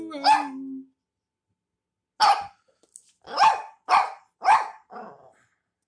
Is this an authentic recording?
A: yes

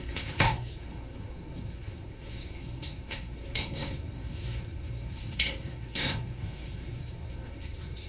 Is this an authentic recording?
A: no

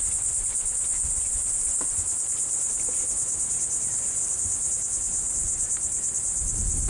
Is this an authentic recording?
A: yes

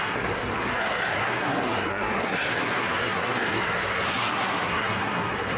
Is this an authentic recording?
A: no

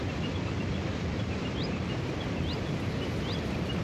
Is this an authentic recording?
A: yes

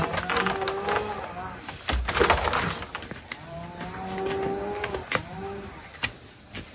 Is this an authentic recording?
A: yes